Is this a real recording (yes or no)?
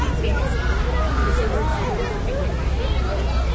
yes